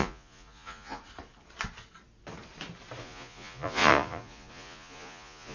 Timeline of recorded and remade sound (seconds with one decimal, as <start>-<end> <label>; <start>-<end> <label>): 0.0-1.0 remade; 1.0-3.0 recorded; 3.0-5.5 remade